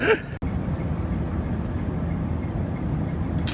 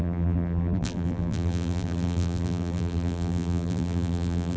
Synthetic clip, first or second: second